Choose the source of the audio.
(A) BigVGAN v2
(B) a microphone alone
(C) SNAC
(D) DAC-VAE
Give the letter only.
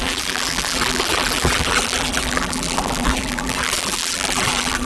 A